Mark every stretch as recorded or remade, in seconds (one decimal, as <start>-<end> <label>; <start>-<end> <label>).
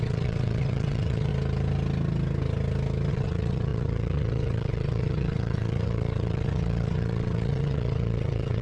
0.0-1.3 remade; 1.3-3.1 recorded; 3.1-8.6 remade